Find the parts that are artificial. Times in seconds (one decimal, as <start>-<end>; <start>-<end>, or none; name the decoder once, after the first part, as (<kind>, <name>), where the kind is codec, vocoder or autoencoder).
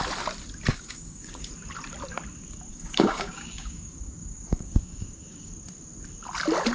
0.7-1.5 (codec, DAC); 2.7-5.5